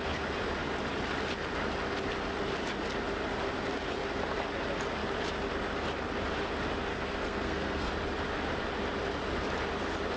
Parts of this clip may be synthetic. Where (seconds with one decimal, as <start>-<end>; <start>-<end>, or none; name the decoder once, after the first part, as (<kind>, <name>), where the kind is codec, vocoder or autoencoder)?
6.9-7.9 (codec, SNAC)